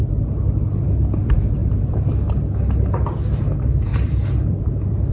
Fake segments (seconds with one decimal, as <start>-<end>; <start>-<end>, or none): 1.6-2.1; 3.9-5.1